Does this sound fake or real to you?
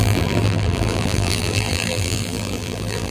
fake